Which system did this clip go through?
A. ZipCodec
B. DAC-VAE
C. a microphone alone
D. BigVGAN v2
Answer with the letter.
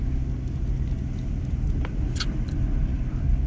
C